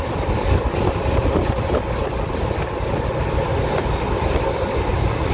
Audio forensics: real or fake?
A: real